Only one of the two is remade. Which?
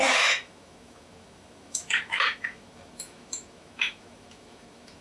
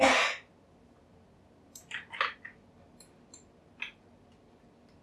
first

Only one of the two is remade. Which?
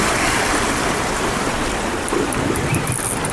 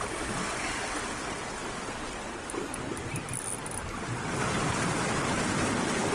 first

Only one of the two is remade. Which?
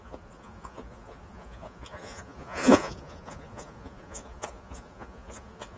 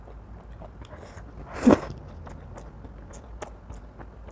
first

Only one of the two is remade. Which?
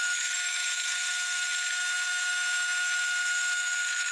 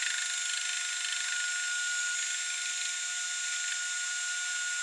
first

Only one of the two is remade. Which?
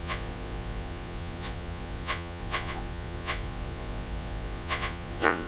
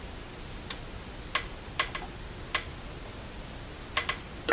first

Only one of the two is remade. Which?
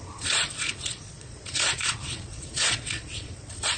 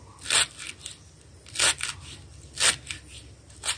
first